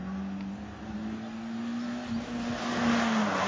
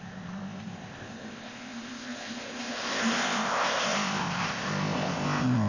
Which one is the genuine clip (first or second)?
first